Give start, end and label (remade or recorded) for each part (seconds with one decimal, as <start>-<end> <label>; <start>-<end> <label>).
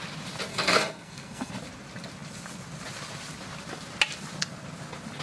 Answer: 0.0-0.5 recorded; 0.5-1.5 remade; 1.5-5.2 recorded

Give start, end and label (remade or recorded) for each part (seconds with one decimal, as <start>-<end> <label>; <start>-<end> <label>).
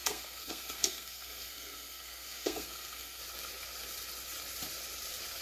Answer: 0.0-3.2 remade; 3.2-5.4 recorded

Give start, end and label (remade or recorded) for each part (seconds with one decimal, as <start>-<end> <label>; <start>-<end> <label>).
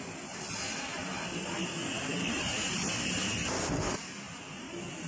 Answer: 0.0-5.1 recorded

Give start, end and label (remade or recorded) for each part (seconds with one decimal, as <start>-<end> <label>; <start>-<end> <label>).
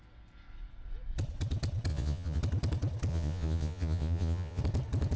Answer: 0.0-1.9 recorded; 1.9-2.4 remade; 2.4-3.1 recorded; 3.1-4.6 remade; 4.6-5.2 recorded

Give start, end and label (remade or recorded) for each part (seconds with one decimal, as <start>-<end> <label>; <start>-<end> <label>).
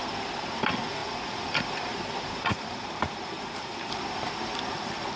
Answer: 0.0-1.0 recorded; 1.0-1.9 remade; 1.9-2.5 recorded; 2.5-3.9 remade; 3.9-5.2 recorded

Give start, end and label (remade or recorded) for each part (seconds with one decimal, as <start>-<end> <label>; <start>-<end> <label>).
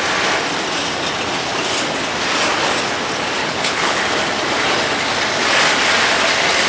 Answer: 0.0-3.4 recorded; 3.4-4.0 remade; 4.0-6.7 recorded